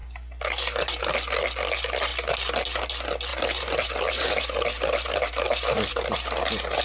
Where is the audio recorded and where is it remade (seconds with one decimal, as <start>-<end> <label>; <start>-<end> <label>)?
0.0-3.3 recorded; 3.3-6.8 remade

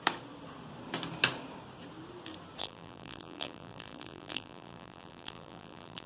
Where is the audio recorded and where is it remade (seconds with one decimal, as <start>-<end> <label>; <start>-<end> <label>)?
0.0-2.6 recorded; 2.6-6.1 remade

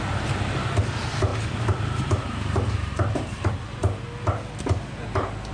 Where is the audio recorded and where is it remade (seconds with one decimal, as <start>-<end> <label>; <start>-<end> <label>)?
0.0-1.3 recorded; 1.3-3.5 remade; 3.5-5.5 recorded

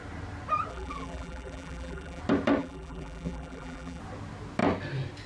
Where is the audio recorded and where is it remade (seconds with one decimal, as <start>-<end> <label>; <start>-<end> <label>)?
0.0-0.7 recorded; 0.7-2.2 remade; 2.2-2.6 recorded; 2.6-4.0 remade; 4.0-5.3 recorded

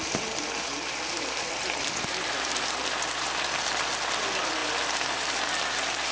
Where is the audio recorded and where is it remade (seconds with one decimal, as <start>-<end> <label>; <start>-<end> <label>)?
0.0-3.7 remade; 3.7-4.6 recorded; 4.6-5.6 remade; 5.6-6.1 recorded

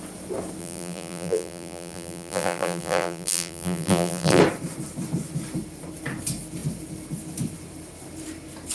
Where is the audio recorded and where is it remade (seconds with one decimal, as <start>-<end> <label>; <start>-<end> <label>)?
0.0-0.6 recorded; 0.6-4.4 remade; 4.4-8.7 recorded

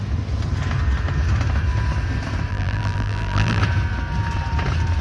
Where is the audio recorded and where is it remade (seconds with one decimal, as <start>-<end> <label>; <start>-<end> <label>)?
0.0-2.5 recorded; 2.5-3.6 remade; 3.6-5.0 recorded